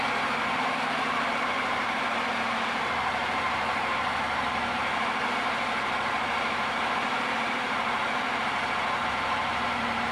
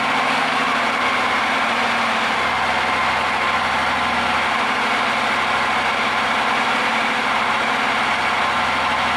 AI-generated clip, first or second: first